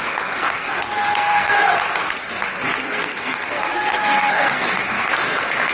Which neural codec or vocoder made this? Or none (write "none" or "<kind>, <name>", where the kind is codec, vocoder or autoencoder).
codec, SNAC